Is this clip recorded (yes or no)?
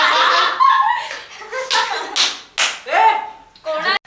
yes